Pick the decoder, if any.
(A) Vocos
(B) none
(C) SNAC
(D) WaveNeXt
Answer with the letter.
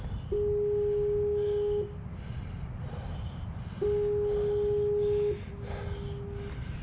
B